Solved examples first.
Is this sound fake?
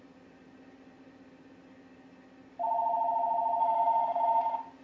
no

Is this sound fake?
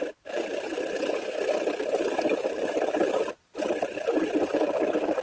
yes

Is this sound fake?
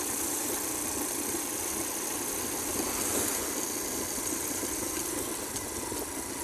no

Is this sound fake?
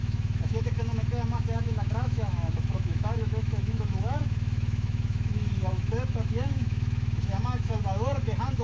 yes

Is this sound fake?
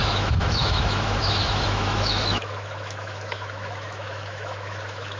yes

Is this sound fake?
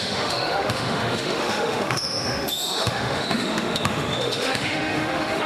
yes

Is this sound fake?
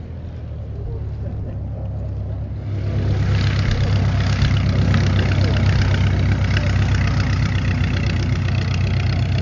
no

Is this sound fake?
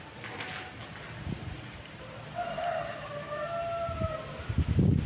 no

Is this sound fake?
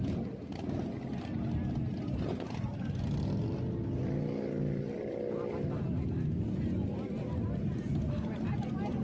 no